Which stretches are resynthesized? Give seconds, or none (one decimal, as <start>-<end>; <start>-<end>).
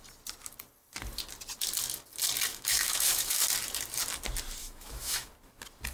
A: 2.5-3.4; 4.6-5.3